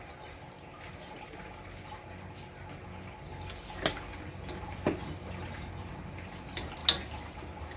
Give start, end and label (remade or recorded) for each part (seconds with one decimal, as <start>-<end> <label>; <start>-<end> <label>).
0.0-7.8 recorded